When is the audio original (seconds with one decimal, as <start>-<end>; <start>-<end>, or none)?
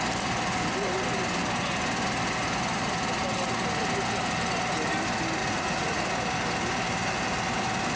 0.0-5.4; 6.0-8.0